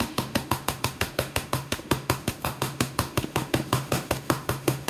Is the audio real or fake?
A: fake